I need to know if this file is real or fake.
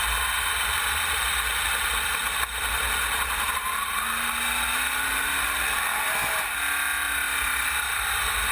real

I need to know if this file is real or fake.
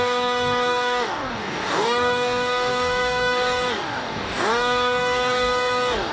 fake